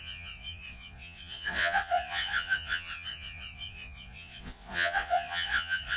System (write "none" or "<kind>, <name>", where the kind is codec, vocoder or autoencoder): vocoder, Vocos